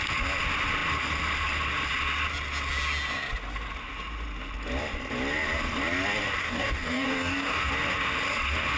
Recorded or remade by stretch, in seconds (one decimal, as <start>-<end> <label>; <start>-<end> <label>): 0.0-6.4 recorded; 6.4-7.7 remade; 7.7-8.8 recorded